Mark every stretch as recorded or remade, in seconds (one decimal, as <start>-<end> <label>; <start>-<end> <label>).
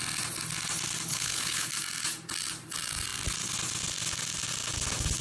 0.0-1.1 recorded; 1.1-1.7 remade; 1.7-5.2 recorded